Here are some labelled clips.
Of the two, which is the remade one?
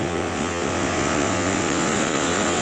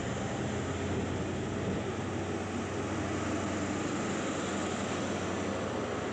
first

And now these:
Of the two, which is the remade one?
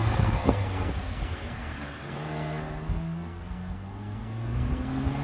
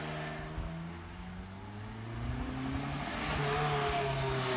first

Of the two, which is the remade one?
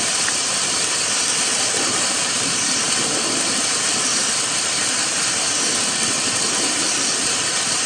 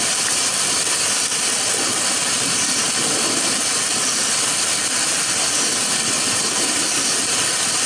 first